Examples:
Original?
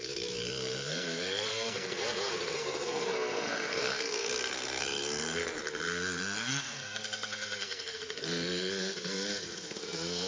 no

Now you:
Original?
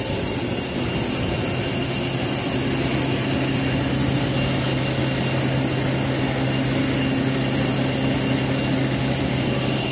yes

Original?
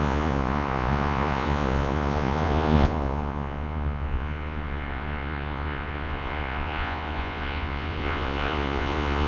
no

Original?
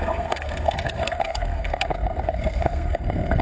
no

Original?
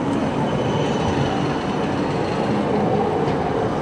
yes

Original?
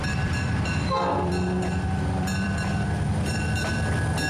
no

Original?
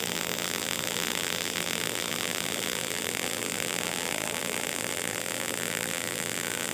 no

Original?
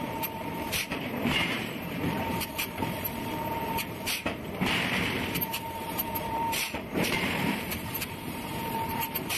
no